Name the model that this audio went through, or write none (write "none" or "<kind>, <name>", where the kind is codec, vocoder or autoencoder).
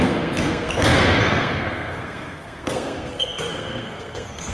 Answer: codec, SNAC